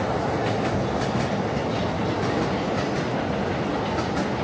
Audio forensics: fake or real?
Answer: real